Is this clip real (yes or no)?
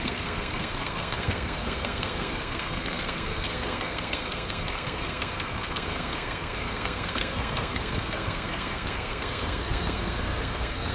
no